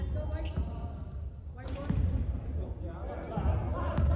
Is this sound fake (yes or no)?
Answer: no